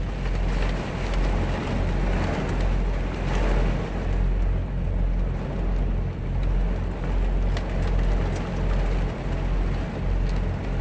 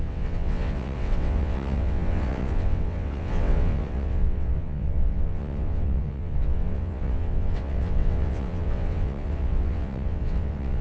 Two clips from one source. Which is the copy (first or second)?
second